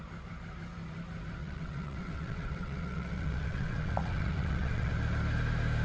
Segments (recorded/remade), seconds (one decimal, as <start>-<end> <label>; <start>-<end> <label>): 0.0-1.4 recorded; 1.4-4.9 remade; 4.9-5.8 recorded